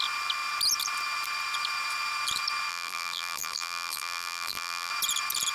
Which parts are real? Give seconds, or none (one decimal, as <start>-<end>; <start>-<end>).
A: 0.0-2.7; 4.9-5.5